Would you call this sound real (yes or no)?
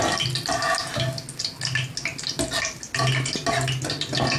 yes